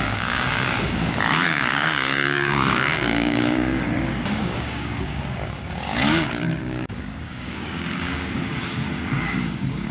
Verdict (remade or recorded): remade